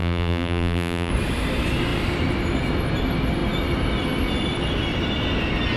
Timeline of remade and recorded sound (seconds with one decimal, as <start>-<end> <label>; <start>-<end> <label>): 0.0-1.1 remade; 1.1-5.8 recorded